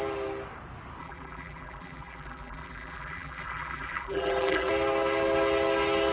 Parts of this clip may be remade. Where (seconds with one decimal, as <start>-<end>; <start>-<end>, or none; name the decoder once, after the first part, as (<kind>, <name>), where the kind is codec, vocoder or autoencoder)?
1.0-4.7 (vocoder, BigVGAN v2)